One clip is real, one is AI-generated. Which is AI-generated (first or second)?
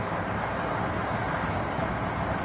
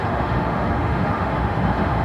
second